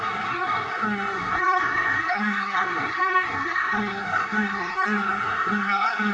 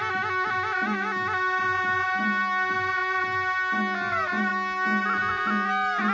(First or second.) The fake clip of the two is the first